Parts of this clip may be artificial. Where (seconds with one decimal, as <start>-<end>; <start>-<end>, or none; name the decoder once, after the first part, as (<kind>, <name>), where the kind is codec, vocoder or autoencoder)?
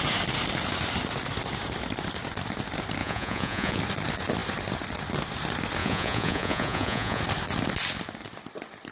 3.0-3.8 (vocoder, Vocos); 5.8-7.2